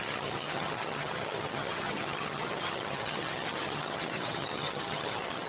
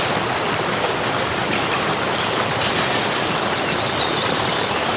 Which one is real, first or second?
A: second